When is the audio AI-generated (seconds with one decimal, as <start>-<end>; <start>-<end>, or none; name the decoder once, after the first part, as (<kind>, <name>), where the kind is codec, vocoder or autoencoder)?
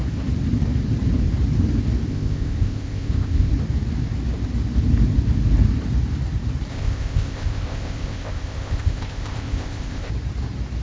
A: 2.1-3.5 (codec, ZipCodec); 6.7-10.1